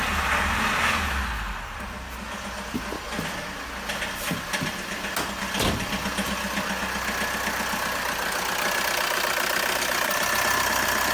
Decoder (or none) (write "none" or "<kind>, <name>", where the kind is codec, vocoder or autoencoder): none